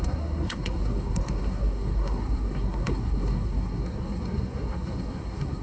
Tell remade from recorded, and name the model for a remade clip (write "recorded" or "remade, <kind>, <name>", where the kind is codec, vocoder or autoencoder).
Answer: remade, codec, SNAC